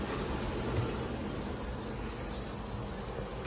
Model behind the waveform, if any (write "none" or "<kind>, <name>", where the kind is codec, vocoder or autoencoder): none